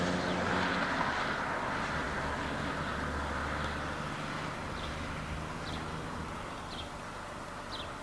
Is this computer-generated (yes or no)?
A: no